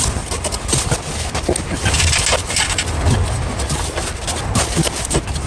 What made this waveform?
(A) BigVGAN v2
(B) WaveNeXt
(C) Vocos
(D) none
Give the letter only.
D